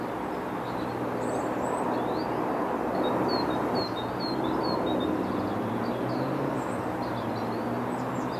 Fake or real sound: real